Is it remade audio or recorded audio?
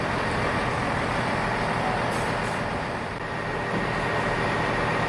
recorded